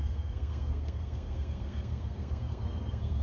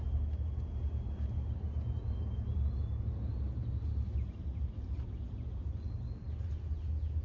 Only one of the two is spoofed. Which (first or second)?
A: first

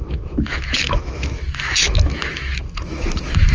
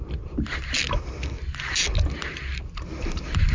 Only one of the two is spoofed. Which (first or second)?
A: first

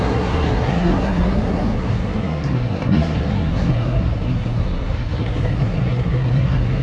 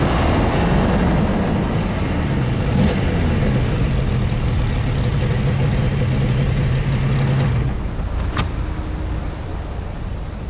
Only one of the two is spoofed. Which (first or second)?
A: first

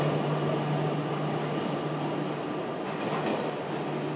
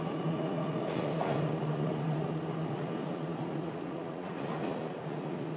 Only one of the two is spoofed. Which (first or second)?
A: second